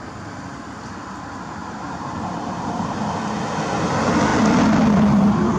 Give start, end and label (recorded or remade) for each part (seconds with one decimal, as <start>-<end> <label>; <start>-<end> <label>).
0.0-1.6 recorded; 1.6-3.1 remade; 3.1-5.6 recorded